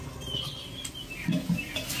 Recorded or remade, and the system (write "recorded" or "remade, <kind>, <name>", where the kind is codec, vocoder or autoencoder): recorded